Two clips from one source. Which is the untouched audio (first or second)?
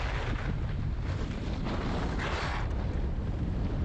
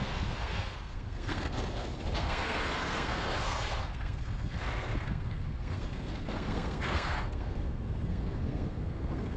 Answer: first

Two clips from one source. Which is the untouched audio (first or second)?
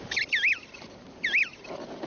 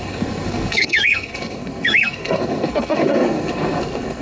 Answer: first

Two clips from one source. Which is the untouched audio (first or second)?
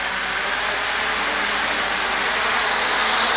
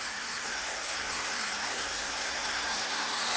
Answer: first